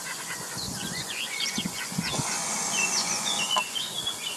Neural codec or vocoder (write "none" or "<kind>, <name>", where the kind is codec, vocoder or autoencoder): vocoder, Vocos